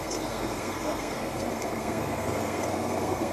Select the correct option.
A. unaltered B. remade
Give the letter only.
B